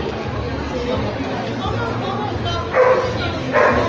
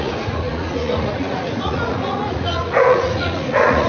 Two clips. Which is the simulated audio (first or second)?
second